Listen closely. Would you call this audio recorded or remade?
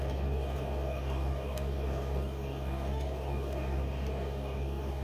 remade